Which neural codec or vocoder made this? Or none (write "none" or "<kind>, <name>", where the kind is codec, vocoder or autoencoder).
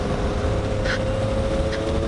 none